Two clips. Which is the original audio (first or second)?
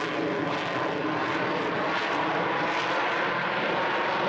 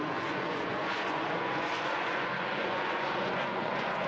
first